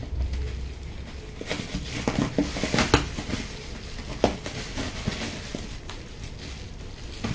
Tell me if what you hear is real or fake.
real